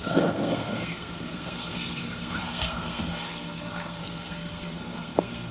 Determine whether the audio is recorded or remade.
remade